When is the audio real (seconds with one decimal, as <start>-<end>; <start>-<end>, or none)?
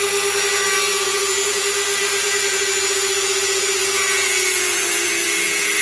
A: 0.0-0.9; 1.6-2.0